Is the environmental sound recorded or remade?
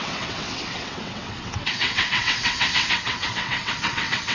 remade